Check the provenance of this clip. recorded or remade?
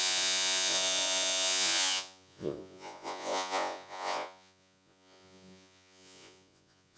remade